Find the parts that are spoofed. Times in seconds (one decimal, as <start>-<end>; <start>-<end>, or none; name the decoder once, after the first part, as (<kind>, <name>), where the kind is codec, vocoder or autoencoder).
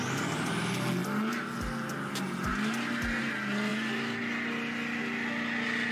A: none